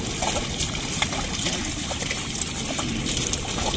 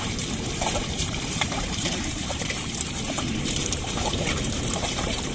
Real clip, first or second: first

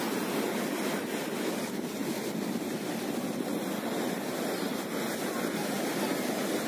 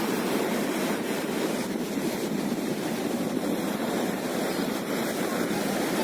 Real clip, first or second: first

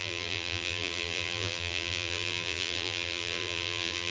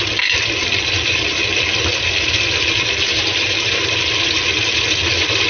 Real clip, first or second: second